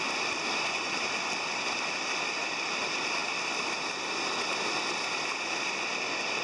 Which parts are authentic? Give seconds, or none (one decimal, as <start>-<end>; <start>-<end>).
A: 0.0-6.4